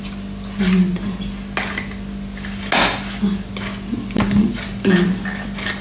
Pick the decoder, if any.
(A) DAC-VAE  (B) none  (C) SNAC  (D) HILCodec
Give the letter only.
B